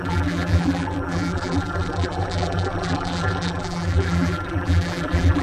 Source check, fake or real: fake